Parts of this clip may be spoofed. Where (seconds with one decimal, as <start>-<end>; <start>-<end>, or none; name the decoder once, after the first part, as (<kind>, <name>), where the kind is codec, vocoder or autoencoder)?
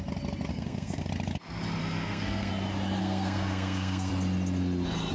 0.5-1.1 (codec, SNAC); 1.8-2.5; 3.0-4.1